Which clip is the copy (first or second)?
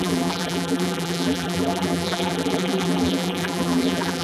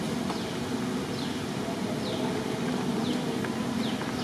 first